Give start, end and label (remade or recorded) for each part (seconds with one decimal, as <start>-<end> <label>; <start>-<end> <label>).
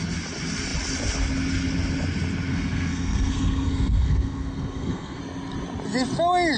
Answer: 0.0-2.5 recorded; 2.5-5.2 remade; 5.2-6.6 recorded